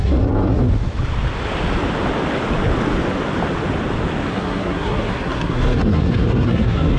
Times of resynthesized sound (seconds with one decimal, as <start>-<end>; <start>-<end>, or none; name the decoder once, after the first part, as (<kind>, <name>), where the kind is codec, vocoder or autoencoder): 0.0-0.7 (codec, SNAC); 4.3-7.0